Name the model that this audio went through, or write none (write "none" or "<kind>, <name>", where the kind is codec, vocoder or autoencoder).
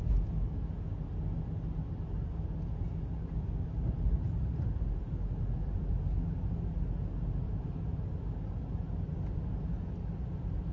none